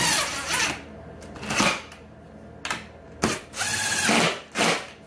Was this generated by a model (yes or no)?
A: no